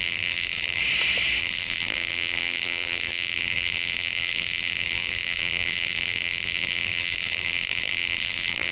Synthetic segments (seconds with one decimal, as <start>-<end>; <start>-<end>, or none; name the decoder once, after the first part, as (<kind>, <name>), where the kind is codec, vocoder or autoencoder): 0.0-0.8 (vocoder, BigVGAN v2); 1.4-8.7